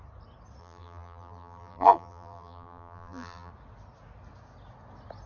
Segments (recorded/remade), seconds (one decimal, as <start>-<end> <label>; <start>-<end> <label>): 0.0-0.6 recorded; 0.6-3.5 remade; 3.5-5.3 recorded